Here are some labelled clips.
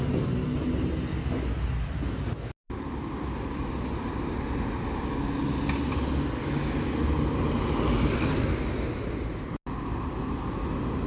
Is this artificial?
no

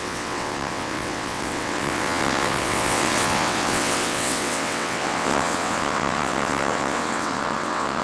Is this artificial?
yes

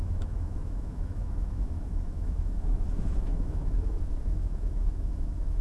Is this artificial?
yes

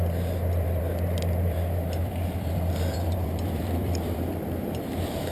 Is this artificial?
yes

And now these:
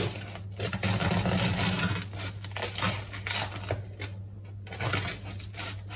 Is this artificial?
no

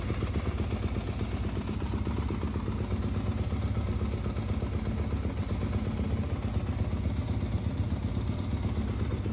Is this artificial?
no